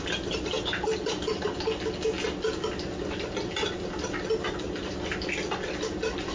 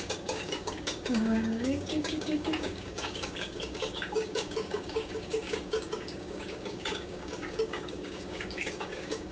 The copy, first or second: second